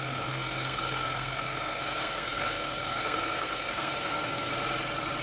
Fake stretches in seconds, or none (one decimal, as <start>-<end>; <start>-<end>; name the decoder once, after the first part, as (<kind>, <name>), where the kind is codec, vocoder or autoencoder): 0.0-4.5 (codec, SNAC)